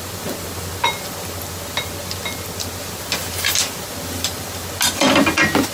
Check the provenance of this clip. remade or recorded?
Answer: recorded